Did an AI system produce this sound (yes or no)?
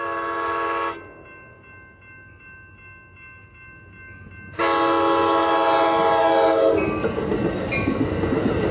no